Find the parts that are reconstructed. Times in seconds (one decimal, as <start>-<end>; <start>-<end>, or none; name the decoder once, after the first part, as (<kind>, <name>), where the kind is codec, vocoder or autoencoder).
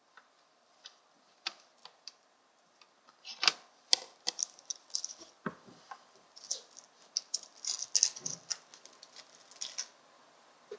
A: 1.8-3.4 (vocoder, BigVGAN v2)